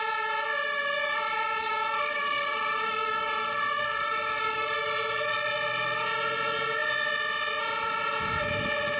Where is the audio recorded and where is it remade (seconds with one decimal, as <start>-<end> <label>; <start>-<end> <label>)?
0.0-1.7 recorded; 1.7-4.9 remade; 4.9-9.0 recorded